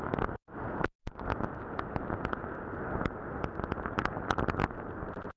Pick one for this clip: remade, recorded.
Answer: recorded